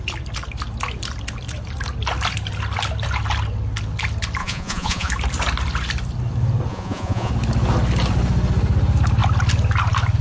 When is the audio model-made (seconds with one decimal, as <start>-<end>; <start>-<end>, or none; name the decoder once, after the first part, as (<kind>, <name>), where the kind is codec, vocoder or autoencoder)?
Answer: 4.4-5.1 (vocoder, Vocos); 6.7-7.3